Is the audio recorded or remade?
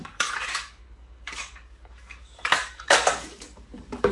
remade